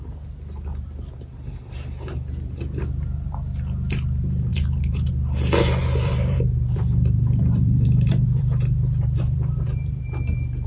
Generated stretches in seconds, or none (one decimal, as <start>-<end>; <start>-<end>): 4.5-5.1; 5.8-10.0